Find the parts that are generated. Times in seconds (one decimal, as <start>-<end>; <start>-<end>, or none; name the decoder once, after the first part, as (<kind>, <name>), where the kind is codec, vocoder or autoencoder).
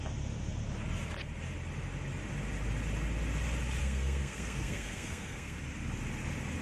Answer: 3.8-5.6 (codec, SNAC)